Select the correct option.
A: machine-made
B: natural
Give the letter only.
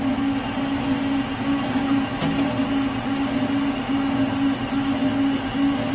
B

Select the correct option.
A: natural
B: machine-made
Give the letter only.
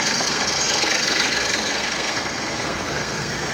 B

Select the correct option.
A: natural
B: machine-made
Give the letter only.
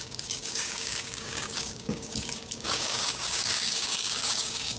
B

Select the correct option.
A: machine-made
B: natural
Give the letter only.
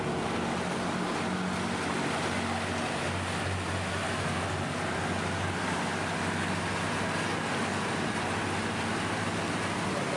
B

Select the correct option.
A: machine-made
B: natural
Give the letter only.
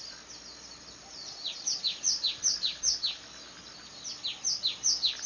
B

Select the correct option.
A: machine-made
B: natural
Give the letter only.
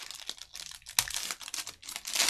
B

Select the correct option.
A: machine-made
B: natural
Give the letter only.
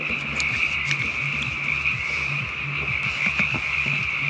B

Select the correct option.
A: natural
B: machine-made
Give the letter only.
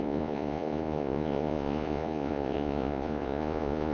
B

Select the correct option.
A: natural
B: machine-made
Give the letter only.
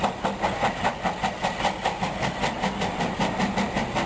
A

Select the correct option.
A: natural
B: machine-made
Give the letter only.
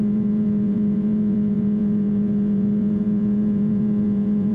B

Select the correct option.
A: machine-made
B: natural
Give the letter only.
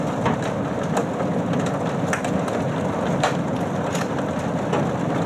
B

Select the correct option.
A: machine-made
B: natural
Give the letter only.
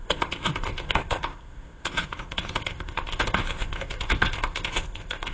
A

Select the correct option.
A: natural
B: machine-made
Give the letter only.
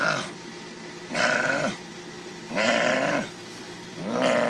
B